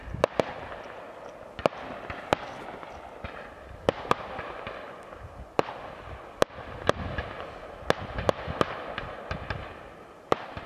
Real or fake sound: real